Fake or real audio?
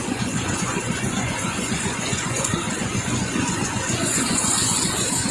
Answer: fake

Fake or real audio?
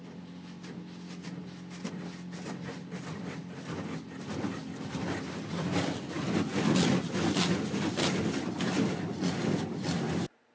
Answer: real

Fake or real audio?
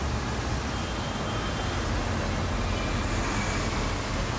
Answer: real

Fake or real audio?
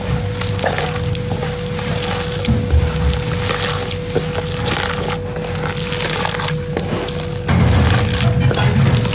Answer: real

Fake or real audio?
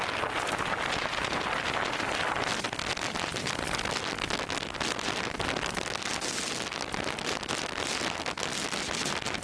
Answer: real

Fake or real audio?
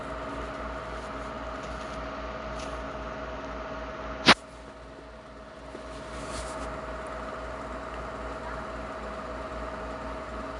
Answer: real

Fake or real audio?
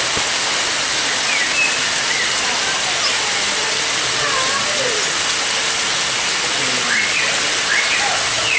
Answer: real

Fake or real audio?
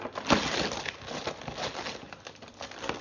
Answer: real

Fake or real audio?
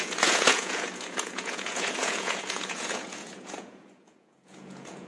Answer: fake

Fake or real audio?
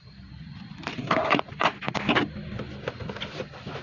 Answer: real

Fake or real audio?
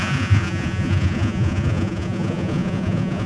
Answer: fake